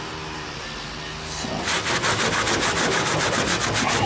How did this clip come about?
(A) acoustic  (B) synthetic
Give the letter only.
A